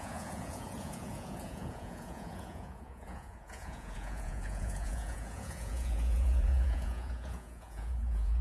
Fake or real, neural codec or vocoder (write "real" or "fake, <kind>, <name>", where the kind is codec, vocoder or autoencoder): fake, vocoder, Vocos